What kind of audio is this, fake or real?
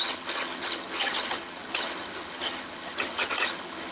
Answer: fake